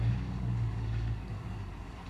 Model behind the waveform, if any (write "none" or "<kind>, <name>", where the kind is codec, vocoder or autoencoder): codec, DAC